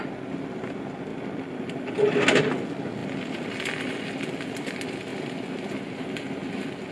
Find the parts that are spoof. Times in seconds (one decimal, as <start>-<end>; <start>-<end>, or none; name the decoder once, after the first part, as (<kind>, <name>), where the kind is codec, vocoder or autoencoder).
1.1-1.9 (vocoder, BigVGAN v2); 3.0-4.1